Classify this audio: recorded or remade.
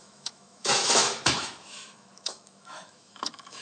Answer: remade